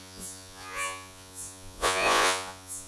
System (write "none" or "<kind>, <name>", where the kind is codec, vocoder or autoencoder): vocoder, Vocos